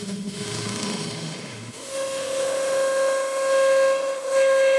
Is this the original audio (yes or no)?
no